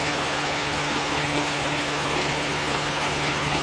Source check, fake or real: fake